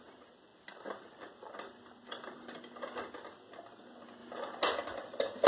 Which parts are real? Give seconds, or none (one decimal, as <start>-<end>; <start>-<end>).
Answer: 0.0-5.5